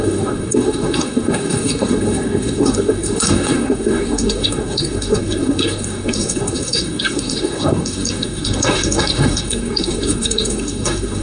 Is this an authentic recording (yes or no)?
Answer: no